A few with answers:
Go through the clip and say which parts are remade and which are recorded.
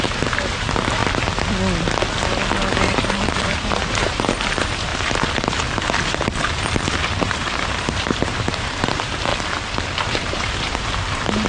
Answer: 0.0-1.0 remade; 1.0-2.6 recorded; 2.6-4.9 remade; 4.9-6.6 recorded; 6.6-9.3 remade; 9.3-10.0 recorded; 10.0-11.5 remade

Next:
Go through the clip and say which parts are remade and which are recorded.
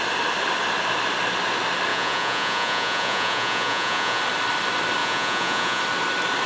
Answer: 0.0-1.9 recorded; 1.9-4.2 remade; 4.2-5.0 recorded; 5.0-5.8 remade; 5.8-6.5 recorded